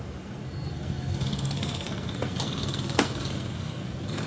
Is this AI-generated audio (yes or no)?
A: yes